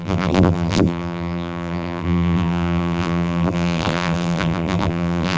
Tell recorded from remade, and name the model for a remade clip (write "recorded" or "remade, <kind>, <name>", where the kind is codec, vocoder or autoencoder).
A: remade, vocoder, BigVGAN v2